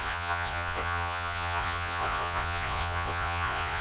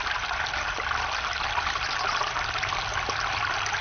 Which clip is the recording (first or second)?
second